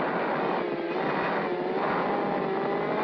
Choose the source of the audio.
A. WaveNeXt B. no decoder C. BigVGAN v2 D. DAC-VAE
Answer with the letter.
B